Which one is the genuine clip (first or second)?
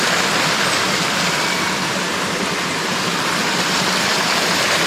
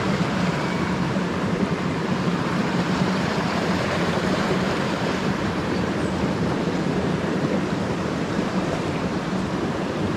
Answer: first